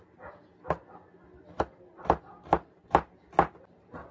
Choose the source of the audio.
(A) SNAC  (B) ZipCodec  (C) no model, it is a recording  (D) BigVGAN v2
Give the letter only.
C